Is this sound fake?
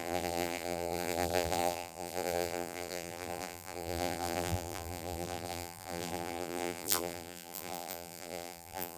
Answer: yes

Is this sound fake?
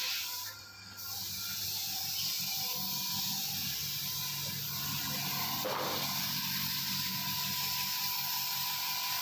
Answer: no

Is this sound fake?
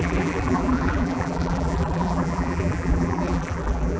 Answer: yes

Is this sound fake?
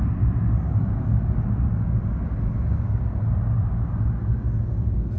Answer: no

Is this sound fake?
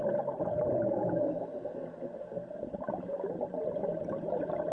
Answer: no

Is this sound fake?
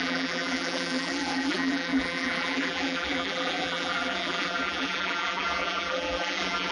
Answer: yes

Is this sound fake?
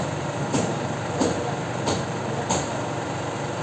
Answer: yes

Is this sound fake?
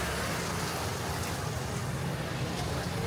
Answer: no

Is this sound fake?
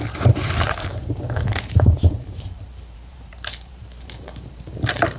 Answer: yes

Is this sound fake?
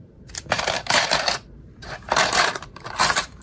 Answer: yes